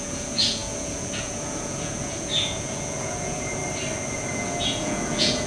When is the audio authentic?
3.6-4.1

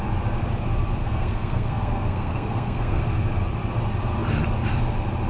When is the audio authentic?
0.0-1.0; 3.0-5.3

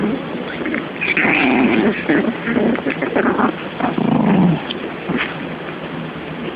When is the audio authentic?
0.0-6.6

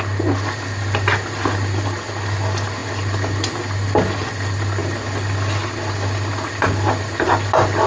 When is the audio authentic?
0.0-7.9

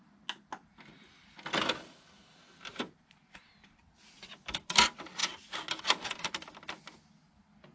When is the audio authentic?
0.0-7.7

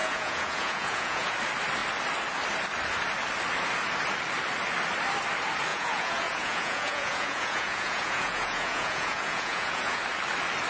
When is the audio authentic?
1.4-5.7; 10.0-10.7

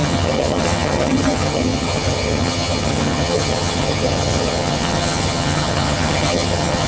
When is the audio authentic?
none